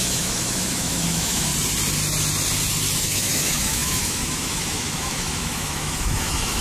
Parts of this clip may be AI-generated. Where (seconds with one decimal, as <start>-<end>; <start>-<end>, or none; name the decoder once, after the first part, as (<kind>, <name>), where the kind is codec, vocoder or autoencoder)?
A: 0.0-1.5 (autoencoder, DAC-VAE); 3.0-6.6